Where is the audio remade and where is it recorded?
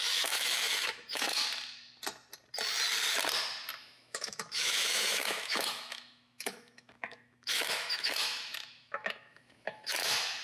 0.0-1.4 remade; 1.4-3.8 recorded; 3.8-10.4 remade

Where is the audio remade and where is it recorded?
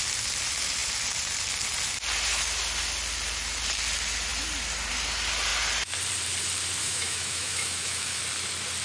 0.0-6.8 recorded; 6.8-8.2 remade; 8.2-8.8 recorded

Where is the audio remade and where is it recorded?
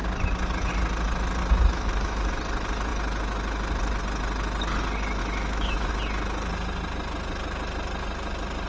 0.0-1.4 recorded; 1.4-2.3 remade; 2.3-5.2 recorded; 5.2-5.9 remade; 5.9-8.7 recorded